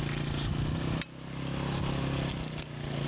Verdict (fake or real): real